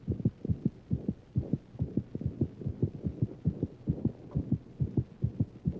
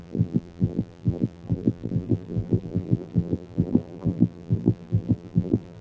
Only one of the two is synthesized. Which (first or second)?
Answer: second